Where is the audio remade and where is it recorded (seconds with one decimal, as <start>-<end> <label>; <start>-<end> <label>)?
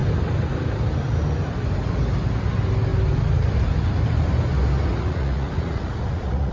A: 0.0-4.9 recorded; 4.9-6.5 remade